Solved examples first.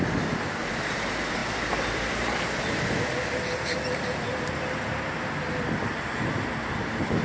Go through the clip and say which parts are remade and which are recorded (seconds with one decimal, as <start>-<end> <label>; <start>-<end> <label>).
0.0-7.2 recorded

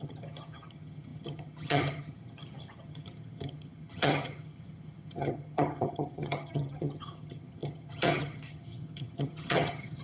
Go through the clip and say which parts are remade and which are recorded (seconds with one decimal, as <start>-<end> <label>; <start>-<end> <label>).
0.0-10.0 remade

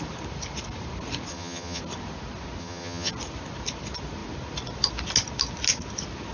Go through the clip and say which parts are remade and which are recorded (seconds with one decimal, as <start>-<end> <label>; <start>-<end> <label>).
0.0-1.3 recorded; 1.3-1.8 remade; 1.8-2.6 recorded; 2.6-3.1 remade; 3.1-6.3 recorded